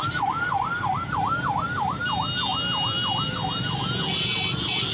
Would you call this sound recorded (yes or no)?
yes